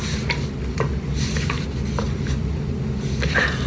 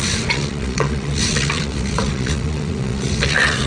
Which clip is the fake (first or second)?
second